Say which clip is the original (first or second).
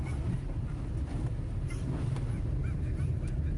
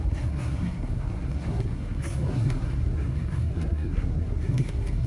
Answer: first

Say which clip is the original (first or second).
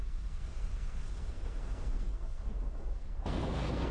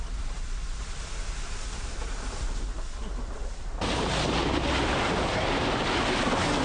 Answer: second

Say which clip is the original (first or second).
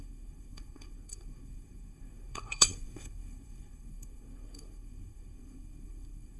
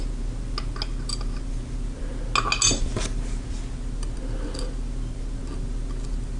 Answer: second